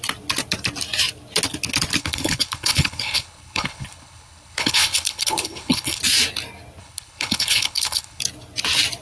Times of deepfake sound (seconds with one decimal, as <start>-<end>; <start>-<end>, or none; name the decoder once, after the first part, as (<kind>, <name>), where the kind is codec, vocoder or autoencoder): 2.0-6.0 (codec, HILCodec); 6.8-8.2